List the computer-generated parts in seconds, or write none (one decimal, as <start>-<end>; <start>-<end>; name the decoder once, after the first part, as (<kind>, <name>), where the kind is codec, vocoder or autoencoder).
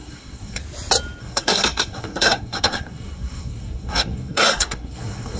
0.0-0.6 (codec, SNAC); 1.2-5.4